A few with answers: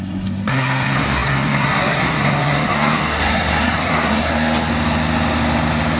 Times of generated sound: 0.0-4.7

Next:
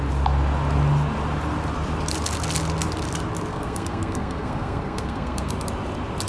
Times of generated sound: 3.5-5.5

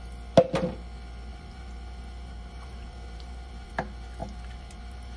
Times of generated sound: 1.3-3.7; 4.2-5.2

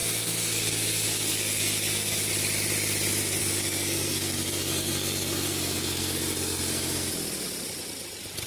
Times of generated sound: 0.0-2.3; 3.4-7.1

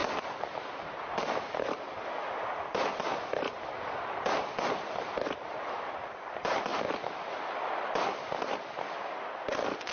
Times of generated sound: 0.9-9.9

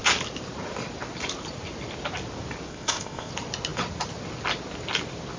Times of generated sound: 2.7-3.3

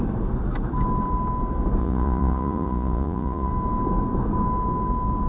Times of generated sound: 1.8-3.5